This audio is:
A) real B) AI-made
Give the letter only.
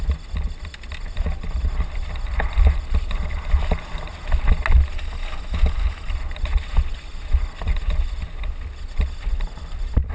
A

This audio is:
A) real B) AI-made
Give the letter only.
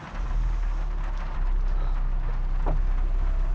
A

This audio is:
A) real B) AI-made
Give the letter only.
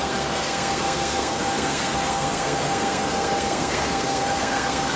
B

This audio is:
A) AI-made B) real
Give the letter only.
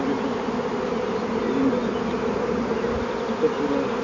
B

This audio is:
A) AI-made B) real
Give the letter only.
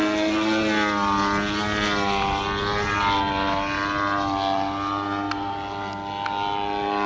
B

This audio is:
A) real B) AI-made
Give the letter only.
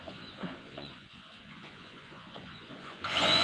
B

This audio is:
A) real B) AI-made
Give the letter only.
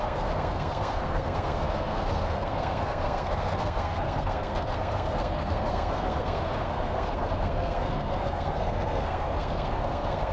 B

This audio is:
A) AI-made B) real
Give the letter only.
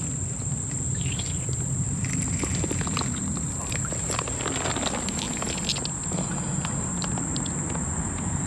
B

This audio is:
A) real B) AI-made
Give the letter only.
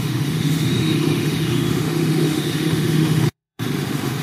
B